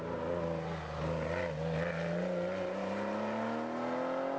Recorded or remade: recorded